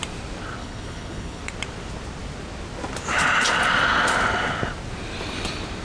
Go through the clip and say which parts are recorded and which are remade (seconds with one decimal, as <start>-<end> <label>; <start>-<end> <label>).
0.0-0.6 recorded; 0.6-1.4 remade; 1.4-5.8 recorded